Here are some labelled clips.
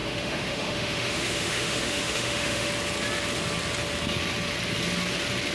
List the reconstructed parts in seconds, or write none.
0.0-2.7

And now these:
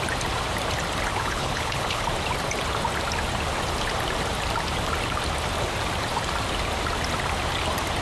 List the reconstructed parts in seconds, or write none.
1.1-2.0